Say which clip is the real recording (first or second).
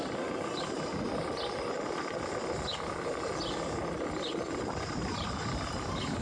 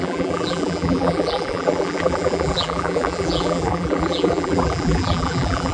first